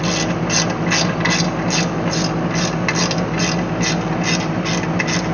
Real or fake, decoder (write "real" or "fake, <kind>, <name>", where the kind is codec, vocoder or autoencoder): real